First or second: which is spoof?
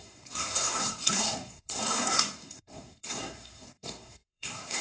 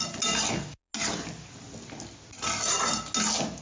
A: first